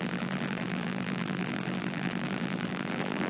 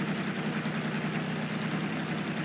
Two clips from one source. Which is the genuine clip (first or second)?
second